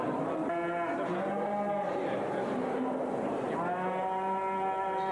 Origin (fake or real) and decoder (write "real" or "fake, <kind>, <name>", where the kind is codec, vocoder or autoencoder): real